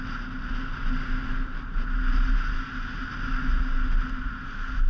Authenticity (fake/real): real